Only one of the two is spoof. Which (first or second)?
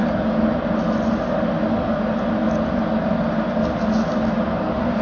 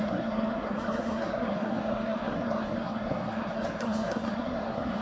second